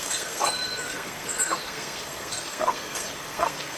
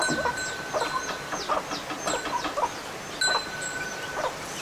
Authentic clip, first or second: second